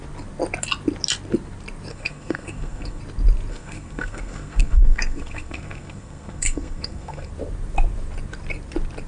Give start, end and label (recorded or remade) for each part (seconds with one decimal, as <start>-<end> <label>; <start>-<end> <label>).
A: 0.0-1.9 recorded; 1.9-3.0 remade; 3.0-3.5 recorded; 3.5-7.3 remade; 7.3-9.1 recorded